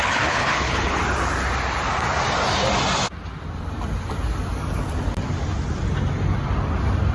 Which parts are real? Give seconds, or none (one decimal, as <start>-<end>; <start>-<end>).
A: 1.0-7.1